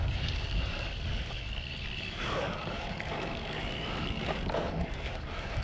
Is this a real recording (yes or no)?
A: no